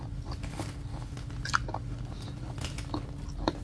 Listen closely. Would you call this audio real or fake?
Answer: real